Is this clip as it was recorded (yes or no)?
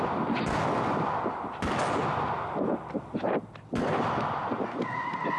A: yes